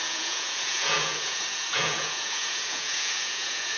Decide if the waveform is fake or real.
fake